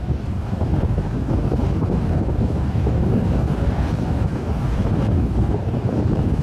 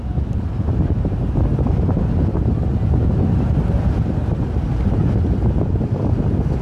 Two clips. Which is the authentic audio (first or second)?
second